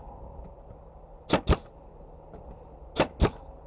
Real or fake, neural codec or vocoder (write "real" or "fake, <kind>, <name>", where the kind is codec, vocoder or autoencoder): real